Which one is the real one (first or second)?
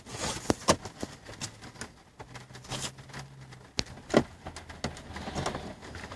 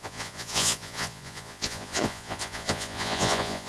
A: first